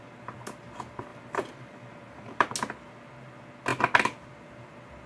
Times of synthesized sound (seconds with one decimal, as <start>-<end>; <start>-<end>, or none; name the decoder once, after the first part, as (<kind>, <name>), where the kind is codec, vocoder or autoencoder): 1.1-2.5 (vocoder, BigVGAN v2)